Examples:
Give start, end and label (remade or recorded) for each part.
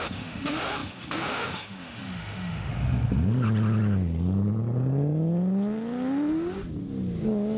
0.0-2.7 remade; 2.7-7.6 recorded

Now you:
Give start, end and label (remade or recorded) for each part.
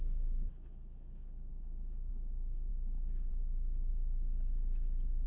0.0-2.7 remade; 2.7-3.3 recorded; 3.3-3.9 remade; 3.9-5.3 recorded